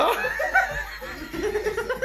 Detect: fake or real real